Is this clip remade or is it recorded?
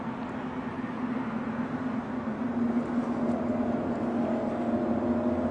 recorded